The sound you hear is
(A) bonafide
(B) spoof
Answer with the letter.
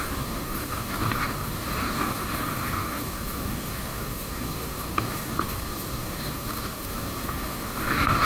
B